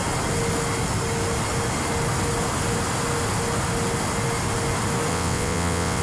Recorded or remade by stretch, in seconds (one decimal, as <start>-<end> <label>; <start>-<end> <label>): 0.0-5.1 recorded; 5.1-6.0 remade